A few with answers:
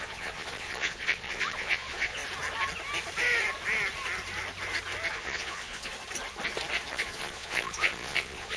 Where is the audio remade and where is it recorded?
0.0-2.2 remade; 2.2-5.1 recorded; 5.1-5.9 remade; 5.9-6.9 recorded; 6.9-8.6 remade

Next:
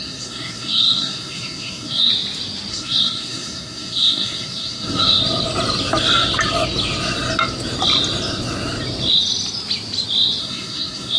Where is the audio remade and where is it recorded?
0.0-2.1 remade; 2.1-2.7 recorded; 2.7-5.2 remade; 5.2-10.4 recorded; 10.4-11.2 remade

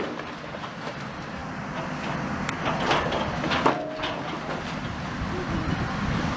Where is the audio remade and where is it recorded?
0.0-6.4 recorded

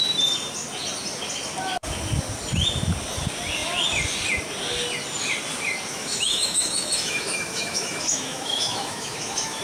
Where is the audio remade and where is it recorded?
0.0-5.9 recorded; 5.9-9.6 remade

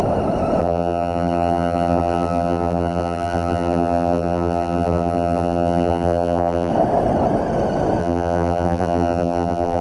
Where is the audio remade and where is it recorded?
0.0-0.6 recorded; 0.6-6.7 remade; 6.7-8.0 recorded; 8.0-9.8 remade

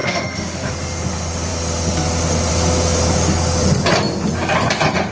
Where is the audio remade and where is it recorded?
0.0-0.7 remade; 0.7-5.1 recorded

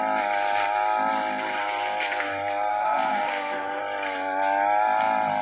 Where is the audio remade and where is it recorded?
0.0-2.7 recorded; 2.7-3.8 remade; 3.8-5.4 recorded